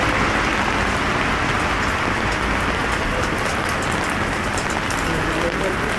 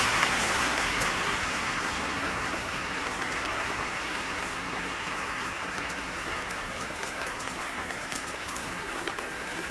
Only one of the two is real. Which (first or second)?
first